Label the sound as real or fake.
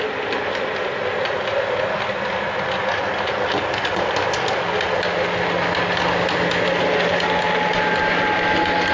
real